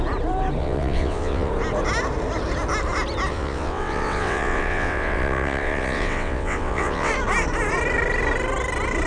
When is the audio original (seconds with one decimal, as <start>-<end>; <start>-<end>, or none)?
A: 0.0-0.6; 1.5-3.3; 7.1-9.1